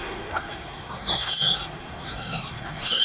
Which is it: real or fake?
fake